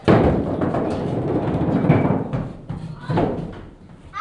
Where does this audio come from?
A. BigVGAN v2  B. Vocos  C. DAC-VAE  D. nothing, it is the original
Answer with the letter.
D